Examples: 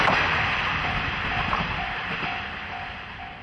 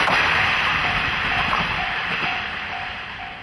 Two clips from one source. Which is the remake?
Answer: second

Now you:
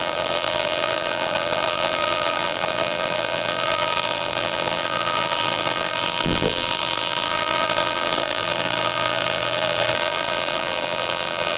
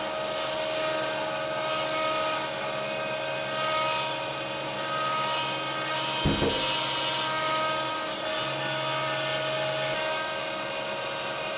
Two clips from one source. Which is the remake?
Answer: first